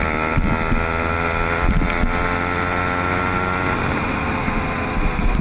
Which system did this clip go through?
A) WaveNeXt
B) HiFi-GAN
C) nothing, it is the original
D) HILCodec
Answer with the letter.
C